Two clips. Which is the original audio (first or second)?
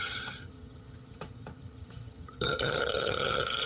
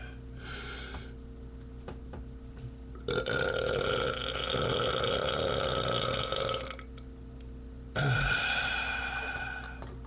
second